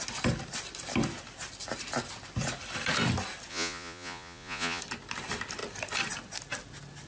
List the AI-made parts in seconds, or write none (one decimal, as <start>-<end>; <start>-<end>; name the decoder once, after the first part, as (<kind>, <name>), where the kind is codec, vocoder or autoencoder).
3.5-4.8 (vocoder, Vocos)